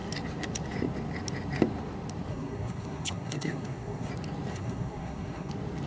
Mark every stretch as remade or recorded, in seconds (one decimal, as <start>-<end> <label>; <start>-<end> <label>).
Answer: 0.0-2.3 recorded; 2.3-4.1 remade; 4.1-4.5 recorded; 4.5-5.5 remade; 5.5-5.9 recorded